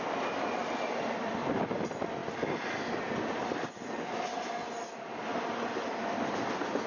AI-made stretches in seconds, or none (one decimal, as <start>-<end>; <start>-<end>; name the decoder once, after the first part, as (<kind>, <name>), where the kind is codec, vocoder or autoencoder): 0.6-1.5 (vocoder, BigVGAN v2); 5.3-6.3